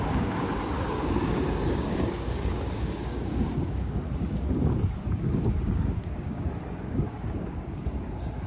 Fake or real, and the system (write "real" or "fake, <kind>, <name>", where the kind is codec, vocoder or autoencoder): fake, codec, DAC